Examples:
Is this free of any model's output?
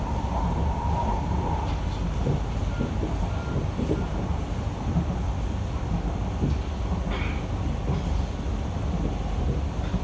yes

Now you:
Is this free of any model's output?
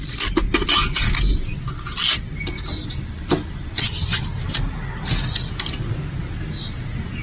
yes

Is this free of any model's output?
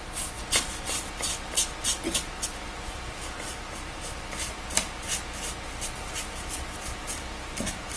yes